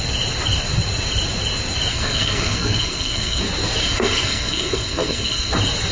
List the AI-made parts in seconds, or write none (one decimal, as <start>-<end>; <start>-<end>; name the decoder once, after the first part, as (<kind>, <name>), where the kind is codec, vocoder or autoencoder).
1.9-3.4 (codec, SNAC); 3.8-5.5